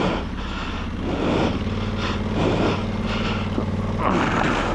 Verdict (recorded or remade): recorded